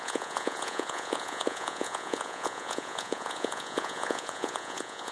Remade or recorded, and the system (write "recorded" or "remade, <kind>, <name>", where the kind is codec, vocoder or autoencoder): remade, vocoder, Vocos